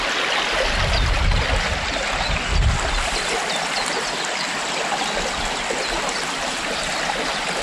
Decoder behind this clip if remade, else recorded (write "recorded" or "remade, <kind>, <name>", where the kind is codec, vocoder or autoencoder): recorded